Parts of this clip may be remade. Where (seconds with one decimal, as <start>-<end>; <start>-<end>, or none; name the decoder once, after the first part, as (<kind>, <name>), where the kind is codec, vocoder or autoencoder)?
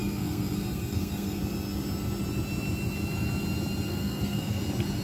0.0-1.4 (codec, SNAC); 3.9-4.6